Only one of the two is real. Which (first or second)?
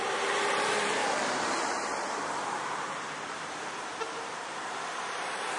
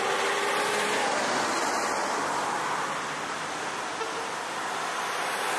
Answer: second